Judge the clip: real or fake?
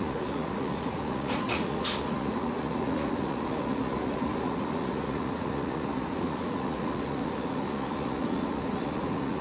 fake